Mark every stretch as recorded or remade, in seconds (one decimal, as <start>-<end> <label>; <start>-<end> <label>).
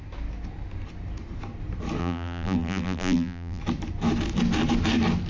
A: 0.0-2.0 recorded; 2.0-3.6 remade; 3.6-5.3 recorded